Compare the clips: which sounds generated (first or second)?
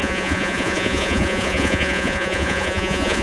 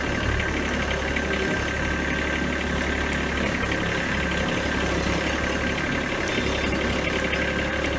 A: first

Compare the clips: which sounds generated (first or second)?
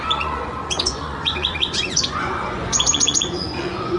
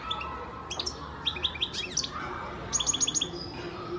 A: first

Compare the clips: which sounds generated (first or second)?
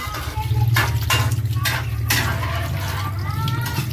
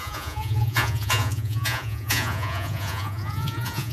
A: second